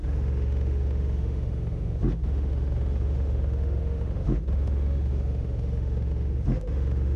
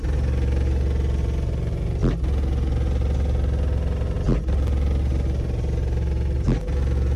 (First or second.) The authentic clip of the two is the second